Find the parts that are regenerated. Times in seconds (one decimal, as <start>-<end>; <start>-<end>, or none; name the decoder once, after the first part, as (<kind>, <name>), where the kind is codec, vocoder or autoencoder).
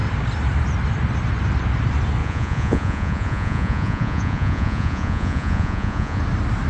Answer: 2.2-6.2 (vocoder, Vocos)